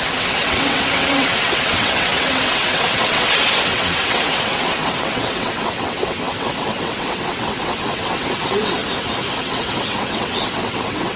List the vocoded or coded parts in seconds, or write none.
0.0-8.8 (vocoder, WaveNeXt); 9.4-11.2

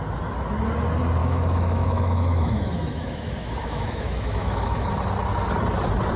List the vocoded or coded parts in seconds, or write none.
1.2-4.9 (autoencoder, DAC-VAE)

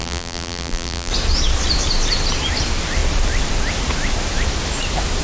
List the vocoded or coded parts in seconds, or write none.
0.0-1.1 (vocoder, BigVGAN v2)